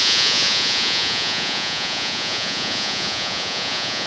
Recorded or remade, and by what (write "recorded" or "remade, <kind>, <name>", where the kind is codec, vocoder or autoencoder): remade, vocoder, Vocos